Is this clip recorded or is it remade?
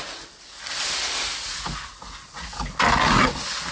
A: recorded